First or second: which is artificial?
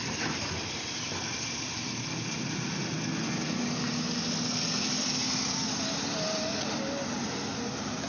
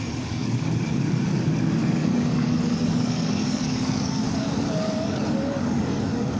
second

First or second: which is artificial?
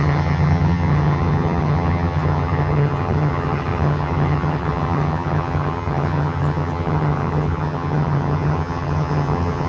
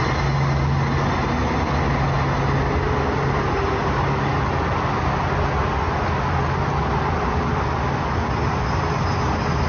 first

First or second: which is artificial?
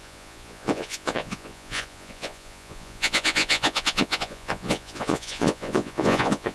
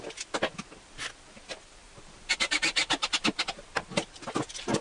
first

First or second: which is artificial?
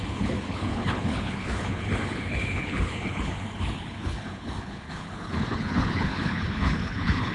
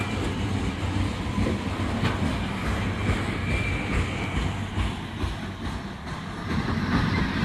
first